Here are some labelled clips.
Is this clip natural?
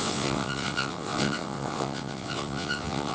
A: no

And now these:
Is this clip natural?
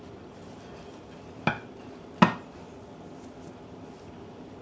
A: yes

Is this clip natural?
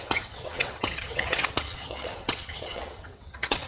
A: no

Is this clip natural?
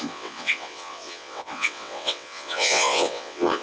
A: no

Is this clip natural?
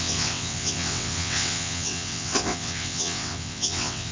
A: no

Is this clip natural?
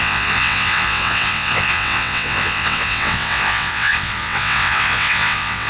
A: no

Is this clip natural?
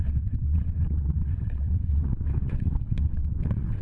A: no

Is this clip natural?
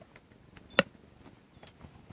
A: yes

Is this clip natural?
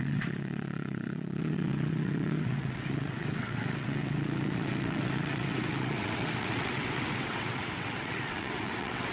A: no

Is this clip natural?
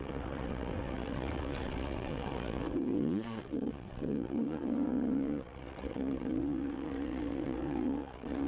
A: no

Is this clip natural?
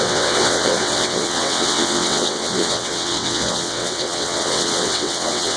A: no